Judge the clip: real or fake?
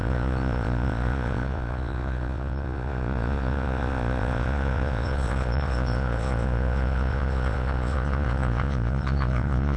fake